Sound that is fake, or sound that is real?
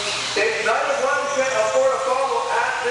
real